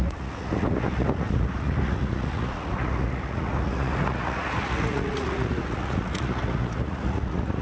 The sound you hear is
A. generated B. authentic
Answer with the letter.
A